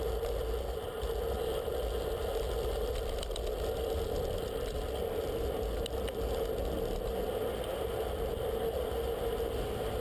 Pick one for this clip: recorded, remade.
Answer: recorded